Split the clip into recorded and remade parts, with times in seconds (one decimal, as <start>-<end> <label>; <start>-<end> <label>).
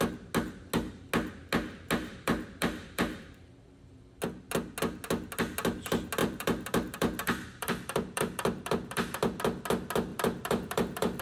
0.0-2.0 recorded; 2.0-4.2 remade; 4.2-6.2 recorded; 6.2-9.4 remade; 9.4-10.1 recorded; 10.1-11.2 remade